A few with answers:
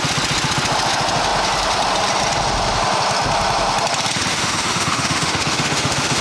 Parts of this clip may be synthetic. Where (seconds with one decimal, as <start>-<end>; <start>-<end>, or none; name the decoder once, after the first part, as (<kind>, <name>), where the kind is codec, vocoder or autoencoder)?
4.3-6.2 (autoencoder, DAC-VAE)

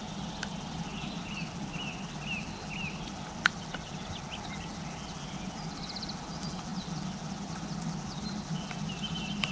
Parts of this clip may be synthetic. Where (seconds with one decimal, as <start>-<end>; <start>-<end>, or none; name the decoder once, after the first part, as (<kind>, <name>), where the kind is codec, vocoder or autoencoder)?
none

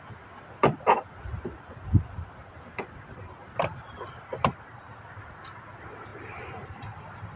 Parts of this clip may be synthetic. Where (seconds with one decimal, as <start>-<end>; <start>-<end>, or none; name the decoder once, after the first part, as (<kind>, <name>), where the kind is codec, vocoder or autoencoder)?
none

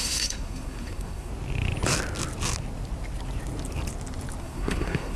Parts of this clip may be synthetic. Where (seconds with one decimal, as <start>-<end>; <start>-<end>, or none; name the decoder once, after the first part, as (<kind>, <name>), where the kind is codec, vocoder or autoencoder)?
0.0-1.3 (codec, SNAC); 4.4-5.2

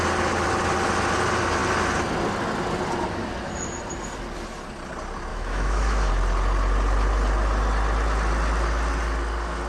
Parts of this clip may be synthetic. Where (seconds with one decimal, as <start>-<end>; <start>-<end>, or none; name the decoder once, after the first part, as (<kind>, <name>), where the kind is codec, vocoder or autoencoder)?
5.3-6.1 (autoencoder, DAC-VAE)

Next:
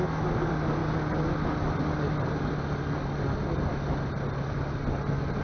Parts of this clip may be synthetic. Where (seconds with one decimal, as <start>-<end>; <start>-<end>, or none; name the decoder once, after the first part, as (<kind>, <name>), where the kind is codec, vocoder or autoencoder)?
none

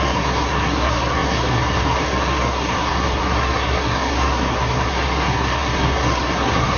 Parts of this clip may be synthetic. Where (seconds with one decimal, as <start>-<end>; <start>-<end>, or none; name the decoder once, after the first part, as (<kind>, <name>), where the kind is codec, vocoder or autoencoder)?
0.0-6.8 (codec, SNAC)

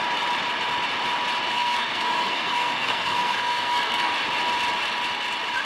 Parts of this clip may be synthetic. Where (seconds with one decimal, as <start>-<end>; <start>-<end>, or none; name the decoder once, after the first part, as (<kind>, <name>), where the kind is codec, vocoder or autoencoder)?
1.5-4.1 (codec, SNAC)